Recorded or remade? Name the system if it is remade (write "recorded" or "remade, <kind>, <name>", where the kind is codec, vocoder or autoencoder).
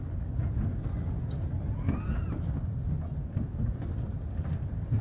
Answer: recorded